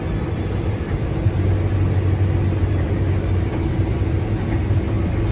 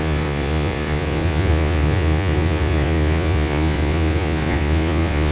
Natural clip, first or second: first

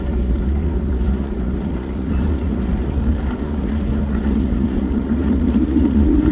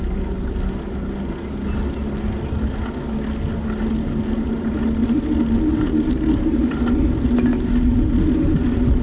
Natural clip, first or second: second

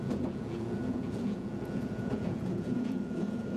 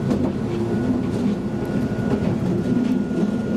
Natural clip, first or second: second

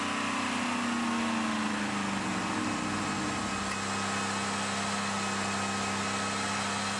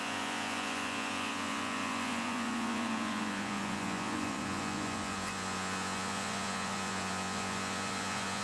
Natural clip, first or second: first